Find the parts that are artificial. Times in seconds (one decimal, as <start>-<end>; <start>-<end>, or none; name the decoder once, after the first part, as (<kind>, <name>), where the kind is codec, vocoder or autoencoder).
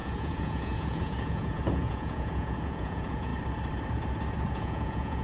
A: 0.0-3.3 (vocoder, Vocos); 4.5-5.2